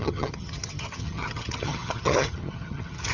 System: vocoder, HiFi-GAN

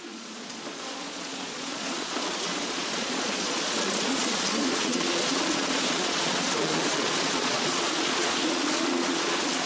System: vocoder, Vocos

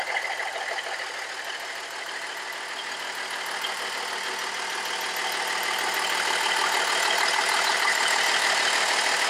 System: none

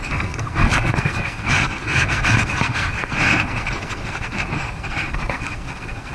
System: codec, SNAC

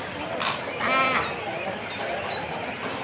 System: none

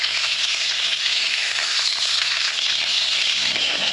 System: codec, SNAC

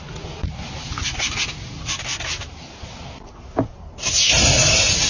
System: none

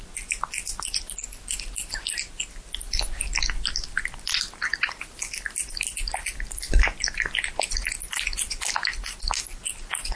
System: none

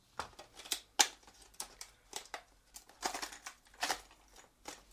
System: none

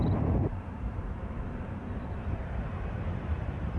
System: vocoder, BigVGAN v2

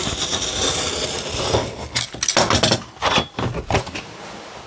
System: none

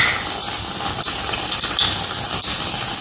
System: none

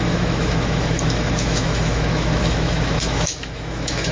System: autoencoder, DAC-VAE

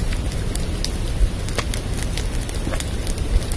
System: none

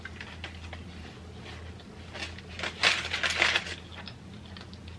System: none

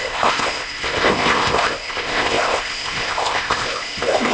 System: codec, ZipCodec